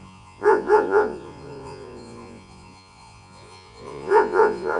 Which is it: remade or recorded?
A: remade